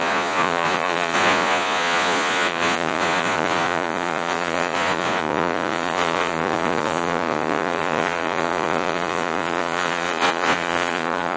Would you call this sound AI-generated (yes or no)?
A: yes